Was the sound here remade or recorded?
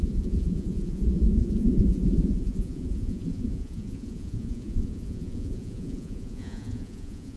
remade